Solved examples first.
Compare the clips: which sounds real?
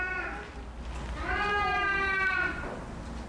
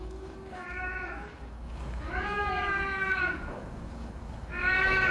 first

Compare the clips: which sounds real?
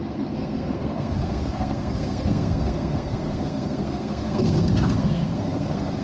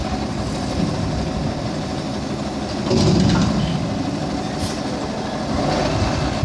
second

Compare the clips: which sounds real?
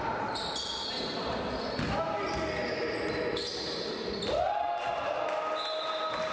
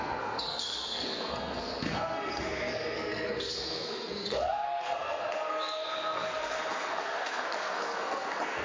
first